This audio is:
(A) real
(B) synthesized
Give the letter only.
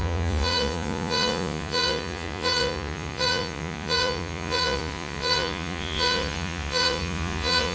B